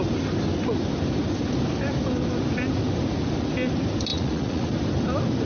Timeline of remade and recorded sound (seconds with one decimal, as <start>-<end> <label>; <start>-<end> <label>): 0.0-4.1 recorded; 4.1-4.7 remade; 4.7-5.5 recorded